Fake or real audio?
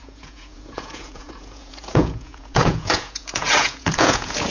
fake